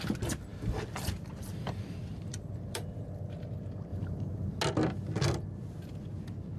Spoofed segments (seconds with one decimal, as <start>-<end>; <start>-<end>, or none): 0.5-3.2; 3.9-4.6